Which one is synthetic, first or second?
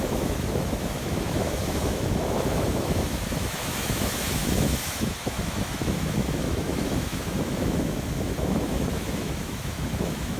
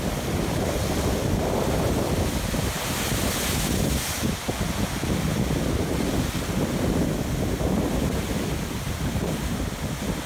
first